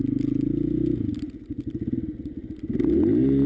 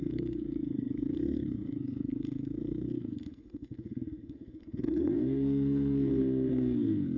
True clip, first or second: first